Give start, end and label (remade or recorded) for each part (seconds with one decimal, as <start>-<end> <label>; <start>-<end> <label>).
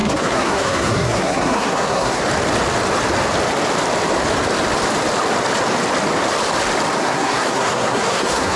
0.0-2.2 remade; 2.2-7.0 recorded; 7.0-8.6 remade